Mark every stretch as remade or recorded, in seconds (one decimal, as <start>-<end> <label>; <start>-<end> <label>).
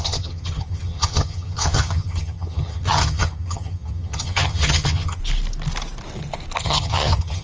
0.0-5.2 remade; 5.2-6.6 recorded; 6.6-7.4 remade